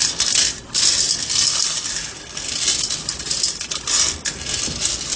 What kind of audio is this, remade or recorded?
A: recorded